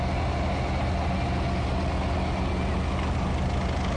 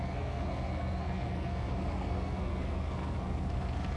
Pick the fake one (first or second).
second